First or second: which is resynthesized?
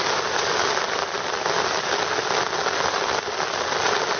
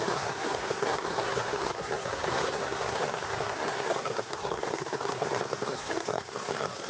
second